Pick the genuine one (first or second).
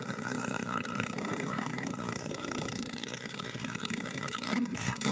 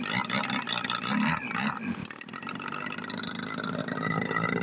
second